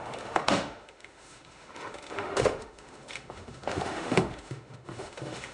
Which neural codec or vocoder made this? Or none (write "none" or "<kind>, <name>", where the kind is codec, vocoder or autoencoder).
autoencoder, DAC-VAE